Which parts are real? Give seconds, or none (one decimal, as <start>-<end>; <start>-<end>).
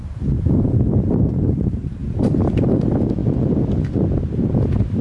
2.0-2.6; 3.2-4.4